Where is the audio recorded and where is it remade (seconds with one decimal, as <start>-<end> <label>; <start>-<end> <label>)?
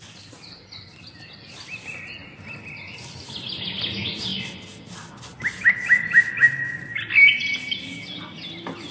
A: 0.0-8.9 recorded